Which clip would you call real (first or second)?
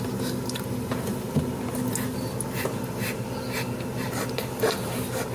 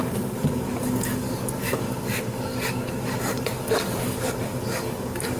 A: first